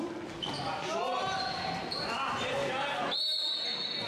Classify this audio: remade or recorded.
recorded